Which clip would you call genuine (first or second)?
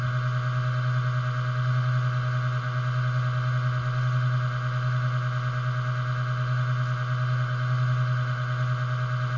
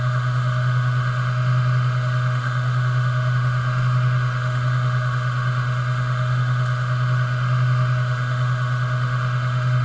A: first